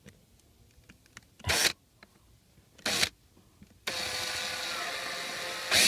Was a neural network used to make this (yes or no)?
no